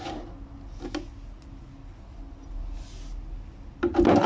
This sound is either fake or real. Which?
real